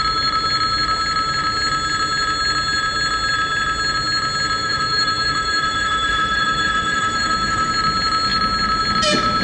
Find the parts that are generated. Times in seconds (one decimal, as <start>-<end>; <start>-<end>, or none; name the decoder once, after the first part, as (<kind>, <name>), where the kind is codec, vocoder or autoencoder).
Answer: 4.6-7.7 (autoencoder, DAC-VAE)